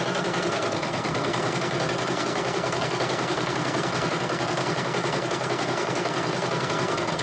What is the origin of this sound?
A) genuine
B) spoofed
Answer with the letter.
B